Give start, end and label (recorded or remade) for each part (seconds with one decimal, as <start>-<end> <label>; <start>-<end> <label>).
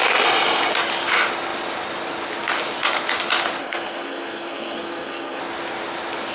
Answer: 0.0-3.6 recorded; 3.6-5.4 remade; 5.4-6.3 recorded